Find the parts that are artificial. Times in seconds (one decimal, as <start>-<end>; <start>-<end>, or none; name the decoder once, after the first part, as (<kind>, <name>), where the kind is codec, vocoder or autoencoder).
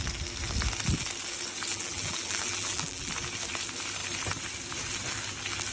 1.7-3.1 (vocoder, BigVGAN v2)